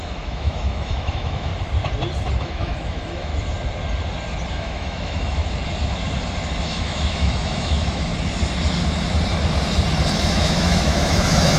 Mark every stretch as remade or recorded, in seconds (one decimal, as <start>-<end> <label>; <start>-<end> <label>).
0.0-1.5 remade; 1.5-2.4 recorded; 2.4-3.3 remade; 3.3-4.5 recorded; 4.5-5.4 remade; 5.4-6.6 recorded; 6.6-8.1 remade; 8.1-10.1 recorded; 10.1-11.6 remade